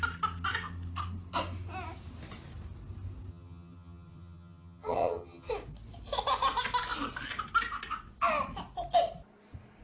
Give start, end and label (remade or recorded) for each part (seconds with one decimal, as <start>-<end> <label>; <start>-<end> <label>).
0.0-3.3 recorded; 3.3-5.5 remade; 5.5-9.8 recorded

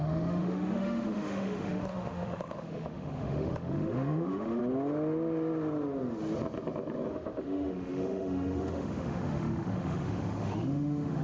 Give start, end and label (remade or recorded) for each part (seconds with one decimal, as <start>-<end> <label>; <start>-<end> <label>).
0.0-4.6 remade; 4.6-7.1 recorded; 7.1-11.2 remade

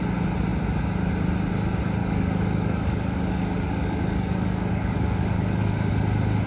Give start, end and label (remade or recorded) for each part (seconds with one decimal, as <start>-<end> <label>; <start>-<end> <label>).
0.0-2.0 recorded; 2.0-5.9 remade; 5.9-6.5 recorded